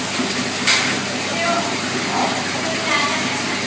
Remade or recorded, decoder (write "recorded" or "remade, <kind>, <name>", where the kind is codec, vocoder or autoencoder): recorded